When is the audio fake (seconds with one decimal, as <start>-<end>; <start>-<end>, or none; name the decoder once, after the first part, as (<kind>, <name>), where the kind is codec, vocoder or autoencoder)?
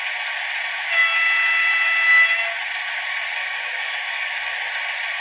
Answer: 3.4-4.4 (codec, DAC)